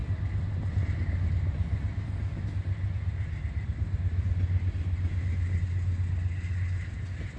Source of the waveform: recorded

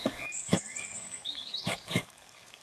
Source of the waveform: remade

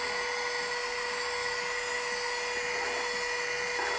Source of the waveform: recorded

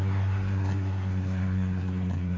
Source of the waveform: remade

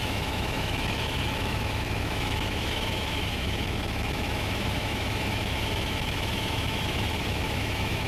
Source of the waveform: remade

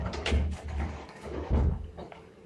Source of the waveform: remade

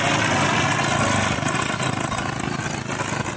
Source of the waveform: recorded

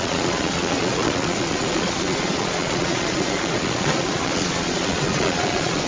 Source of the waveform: remade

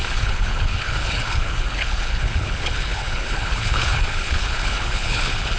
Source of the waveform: remade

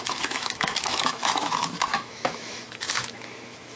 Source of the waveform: remade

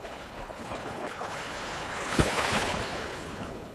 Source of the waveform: remade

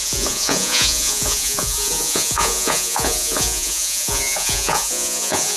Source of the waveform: remade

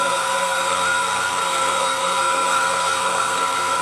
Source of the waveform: remade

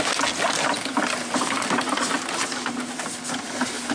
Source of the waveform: recorded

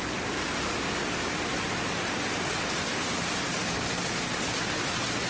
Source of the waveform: recorded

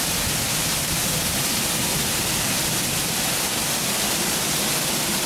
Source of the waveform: recorded